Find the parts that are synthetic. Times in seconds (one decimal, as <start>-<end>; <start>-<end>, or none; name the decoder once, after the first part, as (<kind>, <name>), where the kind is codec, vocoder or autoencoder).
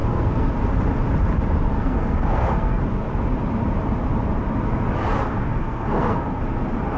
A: 0.0-0.5 (codec, SNAC); 1.8-2.8; 5.6-6.4